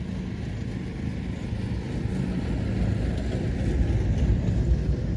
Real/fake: real